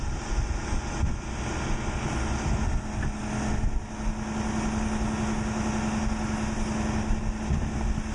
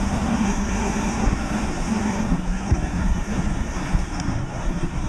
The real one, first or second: first